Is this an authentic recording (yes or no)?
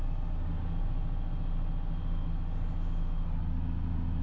yes